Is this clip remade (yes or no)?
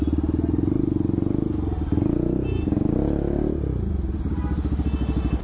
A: no